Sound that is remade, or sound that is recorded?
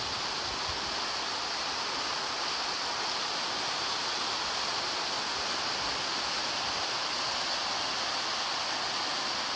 recorded